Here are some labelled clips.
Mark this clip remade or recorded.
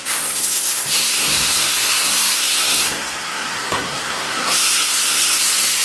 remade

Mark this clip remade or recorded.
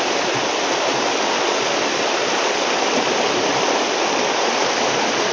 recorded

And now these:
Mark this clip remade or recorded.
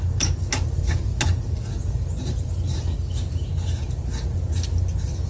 recorded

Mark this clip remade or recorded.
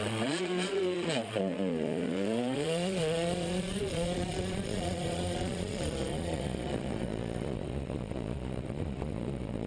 remade